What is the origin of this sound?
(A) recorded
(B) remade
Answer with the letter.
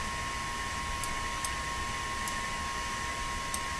A